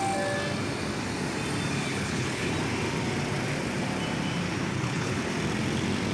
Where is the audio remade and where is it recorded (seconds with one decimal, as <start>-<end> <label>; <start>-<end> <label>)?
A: 0.0-1.9 recorded; 1.9-2.5 remade; 2.5-4.7 recorded; 4.7-5.2 remade; 5.2-6.1 recorded